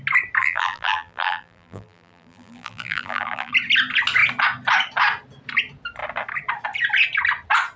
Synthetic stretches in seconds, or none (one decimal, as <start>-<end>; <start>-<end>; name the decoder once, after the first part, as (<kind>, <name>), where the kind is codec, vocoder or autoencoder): 0.4-3.5 (vocoder, BigVGAN v2)